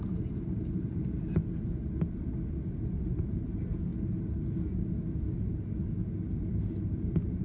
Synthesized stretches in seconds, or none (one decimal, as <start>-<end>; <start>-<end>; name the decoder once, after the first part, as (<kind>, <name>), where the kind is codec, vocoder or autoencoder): 0.0-1.4 (vocoder, BigVGAN v2); 3.0-3.9; 6.4-7.4